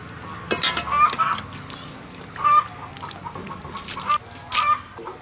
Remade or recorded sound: recorded